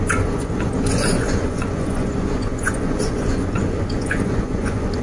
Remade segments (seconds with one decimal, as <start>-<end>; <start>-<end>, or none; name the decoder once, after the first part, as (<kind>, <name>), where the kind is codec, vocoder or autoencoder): 0.0-5.0 (vocoder, Vocos)